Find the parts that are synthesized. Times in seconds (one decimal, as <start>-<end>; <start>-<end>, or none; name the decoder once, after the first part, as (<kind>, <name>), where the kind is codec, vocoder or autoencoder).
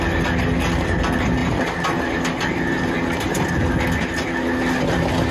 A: none